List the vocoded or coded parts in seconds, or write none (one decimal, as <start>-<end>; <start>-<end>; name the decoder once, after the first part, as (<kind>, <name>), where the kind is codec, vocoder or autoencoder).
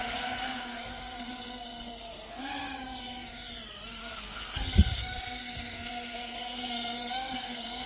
0.4-2.5 (codec, SNAC); 4.0-7.9